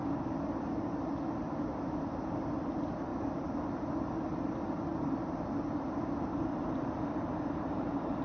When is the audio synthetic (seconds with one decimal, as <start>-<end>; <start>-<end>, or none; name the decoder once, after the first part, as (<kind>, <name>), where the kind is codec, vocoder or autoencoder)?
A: 3.1-4.1 (vocoder, BigVGAN v2); 4.9-6.1; 6.5-8.2